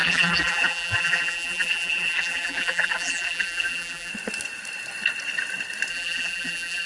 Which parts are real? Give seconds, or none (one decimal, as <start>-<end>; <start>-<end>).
4.1-5.9